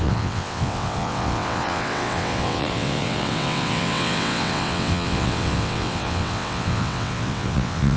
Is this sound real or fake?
fake